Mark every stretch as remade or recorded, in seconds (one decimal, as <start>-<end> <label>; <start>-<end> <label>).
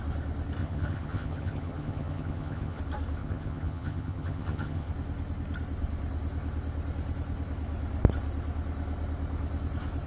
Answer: 0.0-0.6 recorded; 0.6-2.8 remade; 2.8-3.2 recorded; 3.2-4.9 remade; 4.9-10.1 recorded